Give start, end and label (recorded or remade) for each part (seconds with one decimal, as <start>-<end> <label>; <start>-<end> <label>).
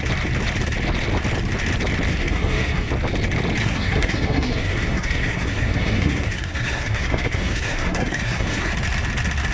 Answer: 0.0-2.1 recorded; 2.1-2.9 remade; 2.9-3.6 recorded; 3.6-8.7 remade; 8.7-9.5 recorded